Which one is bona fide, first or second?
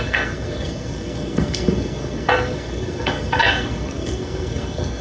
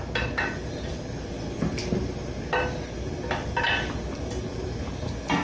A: second